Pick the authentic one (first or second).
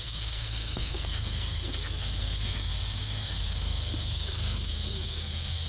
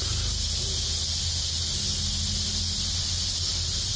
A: second